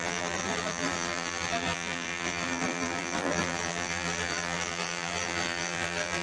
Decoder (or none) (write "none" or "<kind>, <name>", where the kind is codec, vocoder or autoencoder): vocoder, BigVGAN v2